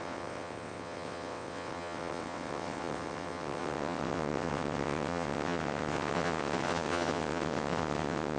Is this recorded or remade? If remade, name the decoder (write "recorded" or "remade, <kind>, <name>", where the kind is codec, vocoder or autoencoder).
remade, vocoder, WaveNeXt